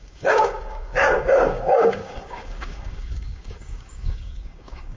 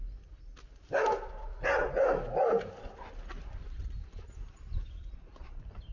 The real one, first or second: second